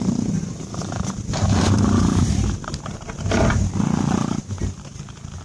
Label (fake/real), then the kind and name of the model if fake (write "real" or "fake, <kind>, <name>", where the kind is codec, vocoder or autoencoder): fake, vocoder, BigVGAN v2